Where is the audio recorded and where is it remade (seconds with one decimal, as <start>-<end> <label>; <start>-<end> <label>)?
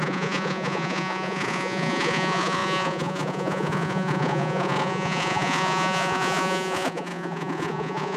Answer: 0.0-8.2 remade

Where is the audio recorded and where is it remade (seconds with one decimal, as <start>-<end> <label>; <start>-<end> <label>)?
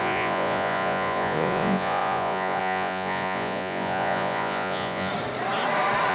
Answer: 0.0-5.1 remade; 5.1-6.1 recorded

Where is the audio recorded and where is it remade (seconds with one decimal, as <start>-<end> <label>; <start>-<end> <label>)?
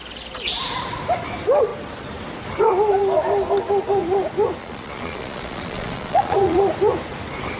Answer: 0.0-4.6 recorded; 4.6-6.7 remade; 6.7-7.6 recorded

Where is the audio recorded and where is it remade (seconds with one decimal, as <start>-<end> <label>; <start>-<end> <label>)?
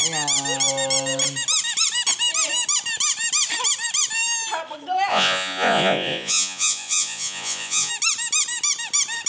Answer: 0.0-5.1 recorded; 5.1-7.9 remade; 7.9-9.3 recorded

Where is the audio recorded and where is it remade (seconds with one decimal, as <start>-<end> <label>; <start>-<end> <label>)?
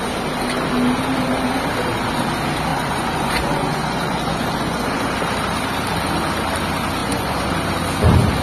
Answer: 0.0-2.7 recorded; 2.7-5.1 remade; 5.1-7.0 recorded; 7.0-7.5 remade; 7.5-8.4 recorded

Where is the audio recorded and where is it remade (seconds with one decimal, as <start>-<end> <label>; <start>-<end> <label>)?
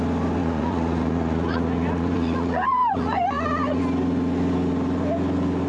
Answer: 0.0-0.4 recorded; 0.4-3.8 remade; 3.8-5.7 recorded